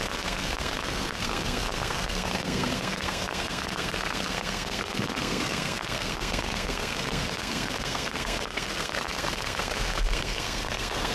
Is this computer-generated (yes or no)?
yes